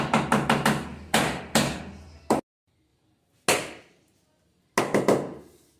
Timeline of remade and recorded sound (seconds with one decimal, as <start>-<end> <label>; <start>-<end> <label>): 0.0-0.9 recorded; 0.9-1.4 remade; 1.4-5.8 recorded